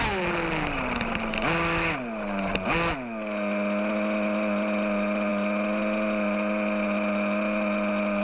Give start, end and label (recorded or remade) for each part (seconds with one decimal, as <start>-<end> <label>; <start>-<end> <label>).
0.0-8.2 recorded